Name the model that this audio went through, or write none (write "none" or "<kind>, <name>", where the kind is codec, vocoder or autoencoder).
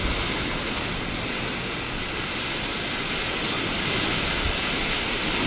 none